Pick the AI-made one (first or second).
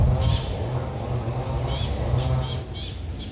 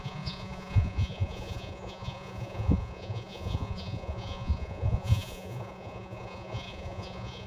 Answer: second